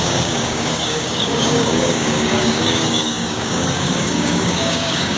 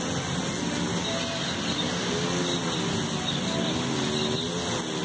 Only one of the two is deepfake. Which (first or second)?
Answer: first